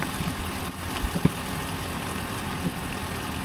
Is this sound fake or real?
real